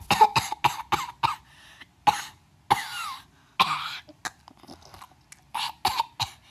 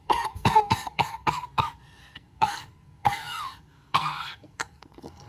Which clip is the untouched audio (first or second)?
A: first